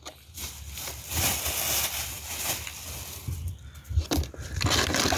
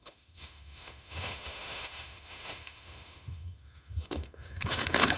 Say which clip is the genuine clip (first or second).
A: first